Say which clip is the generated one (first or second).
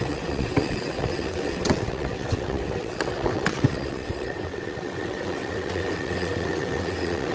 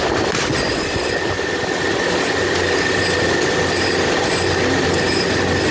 first